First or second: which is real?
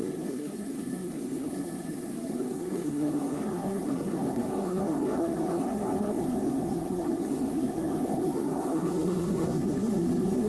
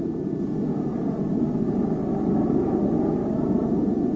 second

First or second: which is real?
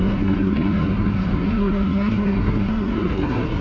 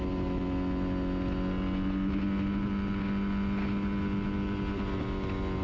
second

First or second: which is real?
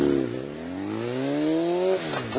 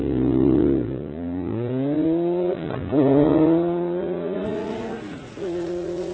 first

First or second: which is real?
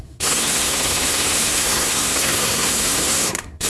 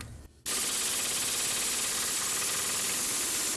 second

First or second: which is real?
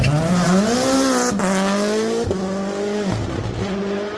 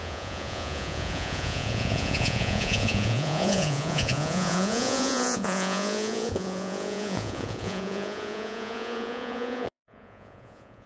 first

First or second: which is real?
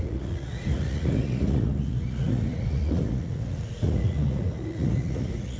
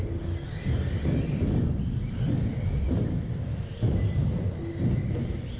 second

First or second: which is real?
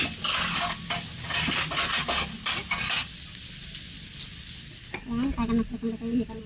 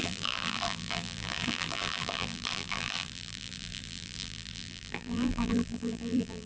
first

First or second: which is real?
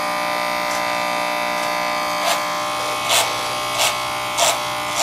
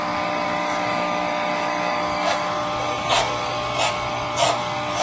first